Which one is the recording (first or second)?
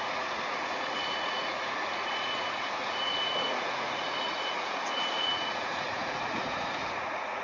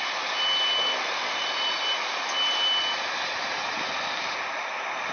second